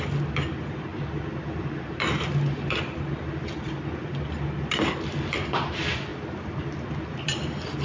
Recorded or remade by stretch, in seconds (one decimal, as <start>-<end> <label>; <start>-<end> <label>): 0.0-6.1 remade; 6.1-7.2 recorded; 7.2-7.8 remade